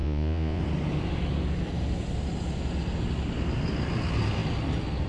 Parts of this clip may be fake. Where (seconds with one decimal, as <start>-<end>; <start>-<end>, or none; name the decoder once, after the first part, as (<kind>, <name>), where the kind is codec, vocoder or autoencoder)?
0.0-0.6 (vocoder, Vocos)